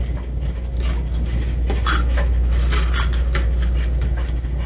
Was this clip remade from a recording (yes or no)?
no